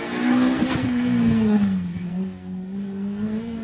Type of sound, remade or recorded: remade